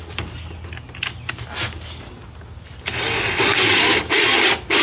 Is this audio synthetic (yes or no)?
no